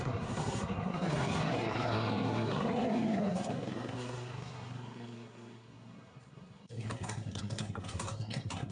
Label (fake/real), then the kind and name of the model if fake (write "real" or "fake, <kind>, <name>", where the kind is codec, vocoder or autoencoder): fake, codec, SNAC